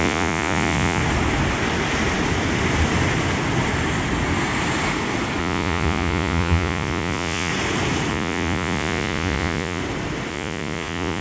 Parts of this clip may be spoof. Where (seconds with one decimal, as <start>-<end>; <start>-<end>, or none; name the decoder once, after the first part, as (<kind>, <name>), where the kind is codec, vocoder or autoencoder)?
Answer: 0.0-1.0 (vocoder, Vocos); 5.4-7.5; 8.1-9.8; 10.3-11.2